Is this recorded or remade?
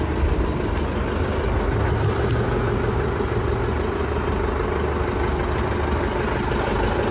recorded